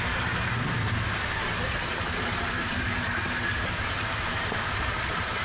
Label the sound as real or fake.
fake